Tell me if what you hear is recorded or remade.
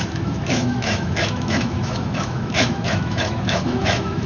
remade